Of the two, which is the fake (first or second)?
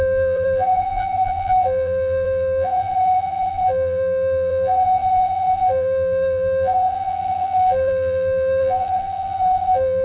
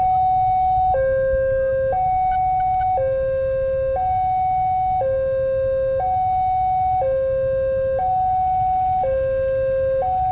first